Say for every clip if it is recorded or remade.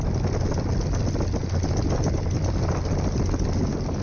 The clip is recorded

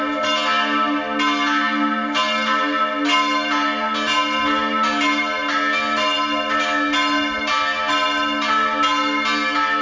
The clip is recorded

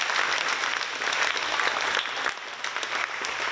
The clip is recorded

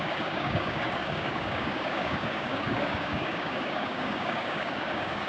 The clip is remade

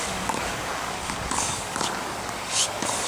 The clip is remade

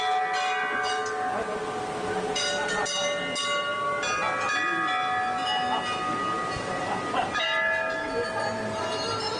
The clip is recorded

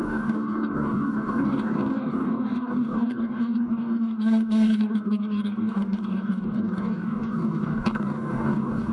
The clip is remade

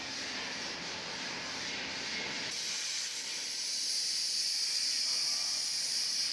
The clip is recorded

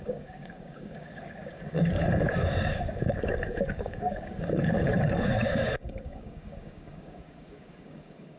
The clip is remade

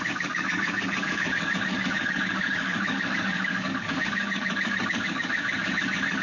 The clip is remade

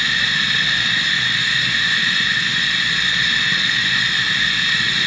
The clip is recorded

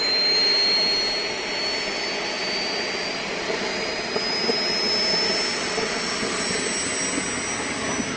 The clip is recorded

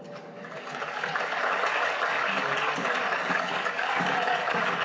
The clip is remade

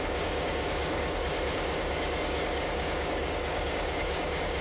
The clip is remade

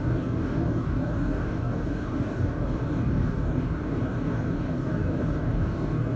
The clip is remade